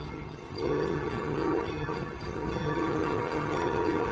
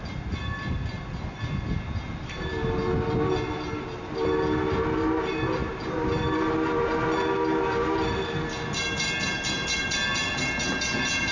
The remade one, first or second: first